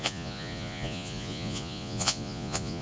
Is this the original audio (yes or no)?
no